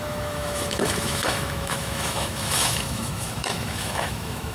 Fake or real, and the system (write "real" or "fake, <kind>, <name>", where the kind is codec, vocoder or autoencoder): fake, autoencoder, DAC-VAE